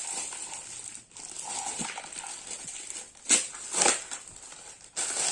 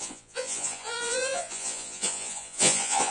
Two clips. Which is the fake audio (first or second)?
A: second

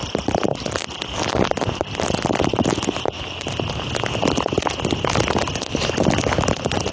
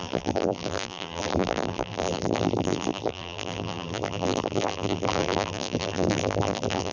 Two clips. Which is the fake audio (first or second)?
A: second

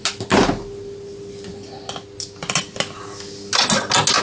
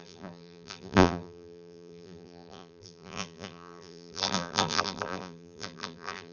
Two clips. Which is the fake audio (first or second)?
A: second